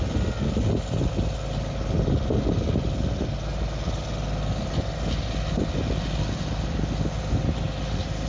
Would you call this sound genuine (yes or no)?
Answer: yes